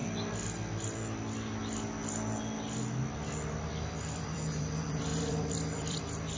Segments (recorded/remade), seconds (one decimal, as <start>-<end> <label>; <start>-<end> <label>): 0.0-3.8 recorded; 3.8-6.4 remade